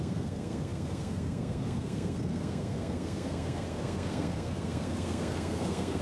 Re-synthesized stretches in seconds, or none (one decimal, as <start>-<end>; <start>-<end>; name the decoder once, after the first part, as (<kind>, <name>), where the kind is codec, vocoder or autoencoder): 0.0-6.0 (codec, SNAC)